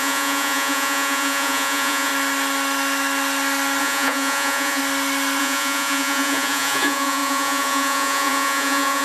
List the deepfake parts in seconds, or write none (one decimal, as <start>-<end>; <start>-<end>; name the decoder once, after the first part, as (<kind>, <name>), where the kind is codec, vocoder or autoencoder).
0.0-2.1 (vocoder, Vocos); 3.8-4.8; 5.4-9.0